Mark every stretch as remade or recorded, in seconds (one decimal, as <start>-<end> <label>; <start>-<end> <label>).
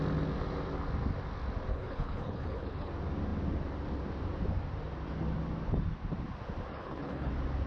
0.0-1.7 recorded; 1.7-2.9 remade; 2.9-6.7 recorded; 6.7-7.3 remade; 7.3-7.7 recorded